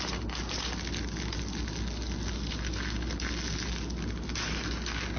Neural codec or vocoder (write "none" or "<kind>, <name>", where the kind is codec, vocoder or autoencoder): none